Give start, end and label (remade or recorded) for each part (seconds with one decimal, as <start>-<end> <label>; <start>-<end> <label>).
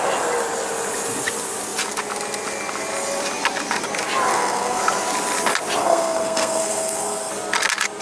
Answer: 0.0-4.3 recorded; 4.3-4.8 remade; 4.8-5.8 recorded; 5.8-7.3 remade; 7.3-8.0 recorded